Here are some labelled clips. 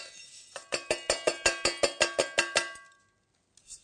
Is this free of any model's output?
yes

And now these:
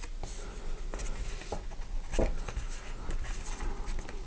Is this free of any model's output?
yes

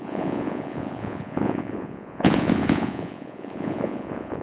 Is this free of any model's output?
no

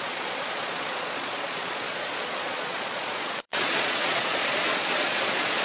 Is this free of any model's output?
no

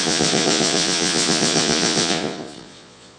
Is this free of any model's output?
no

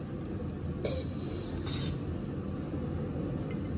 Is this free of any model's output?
yes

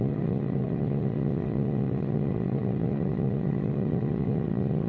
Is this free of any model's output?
no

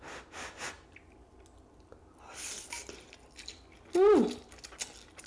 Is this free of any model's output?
yes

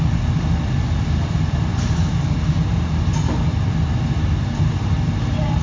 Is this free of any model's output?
yes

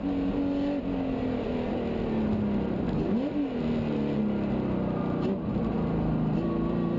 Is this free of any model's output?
yes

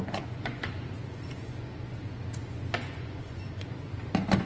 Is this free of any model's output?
no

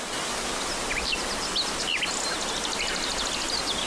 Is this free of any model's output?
yes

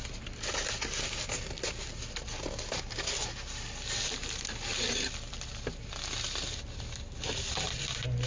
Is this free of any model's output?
yes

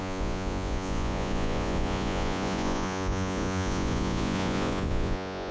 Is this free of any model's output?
no